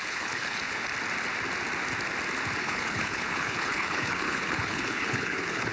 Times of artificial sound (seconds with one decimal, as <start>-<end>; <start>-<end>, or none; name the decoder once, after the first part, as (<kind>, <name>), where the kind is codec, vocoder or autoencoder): 0.0-0.9 (codec, HILCodec); 2.6-5.7